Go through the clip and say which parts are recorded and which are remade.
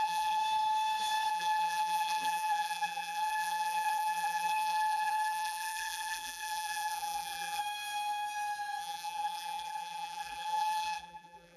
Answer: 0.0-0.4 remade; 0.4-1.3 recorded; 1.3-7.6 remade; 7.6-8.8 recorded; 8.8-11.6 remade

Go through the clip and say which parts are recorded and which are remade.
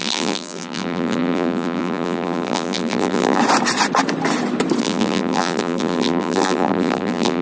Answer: 0.0-3.4 remade; 3.4-4.8 recorded; 4.8-7.4 remade